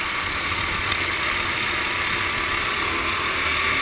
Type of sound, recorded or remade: recorded